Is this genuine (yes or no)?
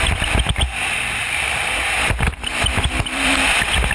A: yes